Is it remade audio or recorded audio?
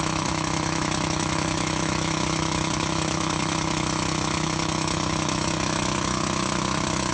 remade